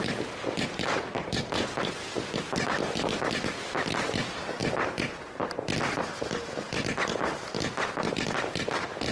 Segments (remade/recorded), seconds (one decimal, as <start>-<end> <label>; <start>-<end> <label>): 0.0-9.1 recorded